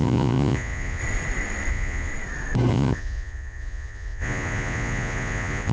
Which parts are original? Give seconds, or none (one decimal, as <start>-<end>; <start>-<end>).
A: 1.0-1.7; 2.1-2.7